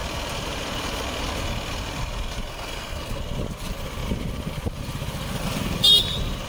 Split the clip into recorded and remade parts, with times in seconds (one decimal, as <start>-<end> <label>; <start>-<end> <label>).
0.0-2.5 recorded; 2.5-3.2 remade; 3.2-6.5 recorded